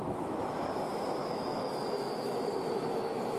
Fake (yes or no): yes